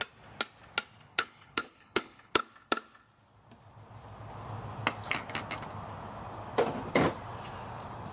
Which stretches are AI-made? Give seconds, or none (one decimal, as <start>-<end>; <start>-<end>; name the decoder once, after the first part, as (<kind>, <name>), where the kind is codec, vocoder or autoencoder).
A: 1.1-2.4 (codec, HILCodec)